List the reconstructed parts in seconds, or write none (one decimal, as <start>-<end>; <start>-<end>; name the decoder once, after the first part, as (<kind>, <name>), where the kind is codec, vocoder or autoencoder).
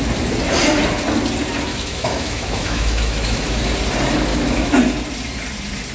1.7-3.6 (autoencoder, DAC-VAE); 4.3-4.8